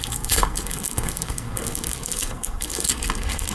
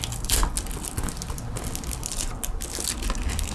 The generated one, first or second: first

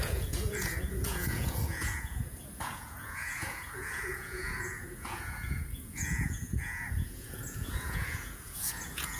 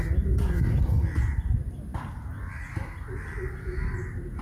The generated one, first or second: first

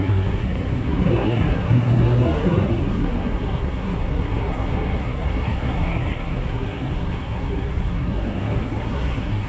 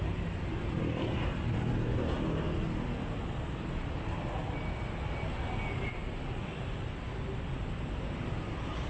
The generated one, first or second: first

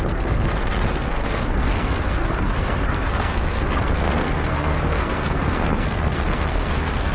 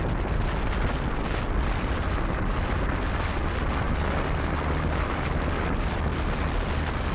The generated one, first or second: first